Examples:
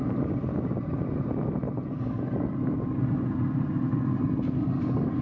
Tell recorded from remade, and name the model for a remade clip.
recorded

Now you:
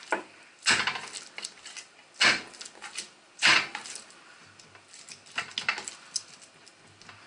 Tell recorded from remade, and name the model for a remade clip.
recorded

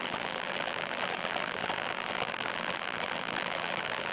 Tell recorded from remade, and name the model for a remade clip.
remade, vocoder, BigVGAN v2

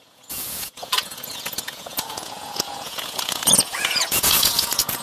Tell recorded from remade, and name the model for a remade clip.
remade, vocoder, Vocos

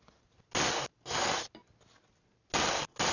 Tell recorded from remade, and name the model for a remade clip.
recorded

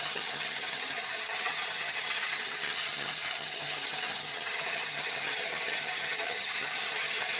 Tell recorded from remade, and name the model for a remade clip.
remade, vocoder, HiFi-GAN